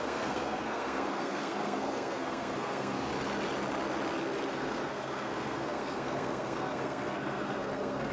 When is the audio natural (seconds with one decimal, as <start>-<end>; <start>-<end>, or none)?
3.1-4.5